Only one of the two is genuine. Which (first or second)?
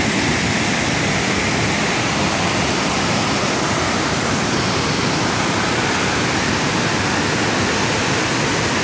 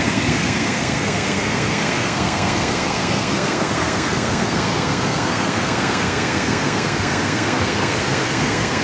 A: first